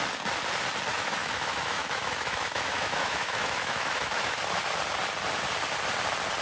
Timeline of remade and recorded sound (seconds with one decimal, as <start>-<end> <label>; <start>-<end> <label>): 0.0-0.9 recorded; 0.9-4.4 remade; 4.4-6.4 recorded